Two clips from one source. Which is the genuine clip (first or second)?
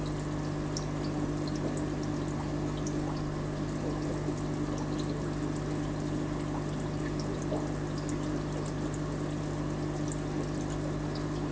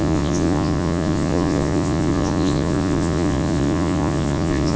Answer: first